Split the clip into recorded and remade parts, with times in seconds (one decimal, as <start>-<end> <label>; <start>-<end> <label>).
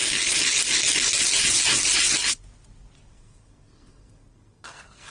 0.0-3.1 recorded; 3.1-5.1 remade